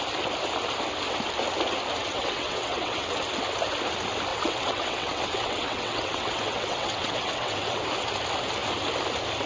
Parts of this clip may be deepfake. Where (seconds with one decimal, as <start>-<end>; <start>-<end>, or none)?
2.0-3.2; 4.3-7.8